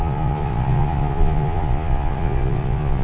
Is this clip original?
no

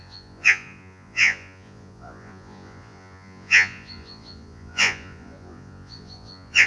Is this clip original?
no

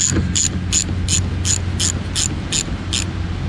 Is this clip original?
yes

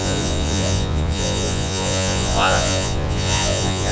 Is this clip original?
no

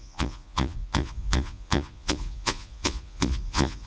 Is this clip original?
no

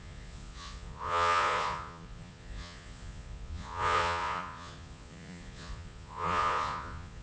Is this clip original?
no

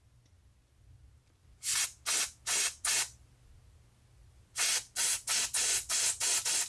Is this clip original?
yes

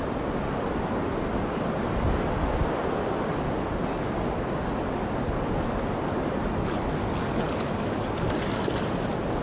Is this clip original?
yes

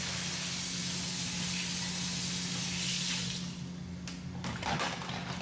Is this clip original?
yes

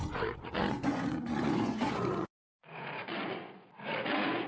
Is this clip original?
no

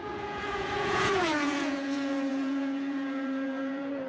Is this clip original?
no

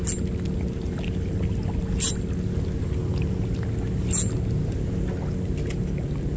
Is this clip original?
yes